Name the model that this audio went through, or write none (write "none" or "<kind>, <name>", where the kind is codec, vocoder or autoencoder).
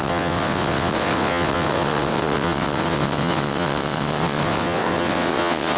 vocoder, WaveNeXt